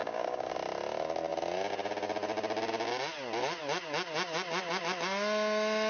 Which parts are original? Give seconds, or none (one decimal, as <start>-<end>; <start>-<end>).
0.5-5.9